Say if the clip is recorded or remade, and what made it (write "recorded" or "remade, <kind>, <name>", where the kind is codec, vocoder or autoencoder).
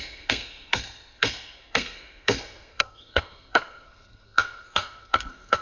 remade, codec, SNAC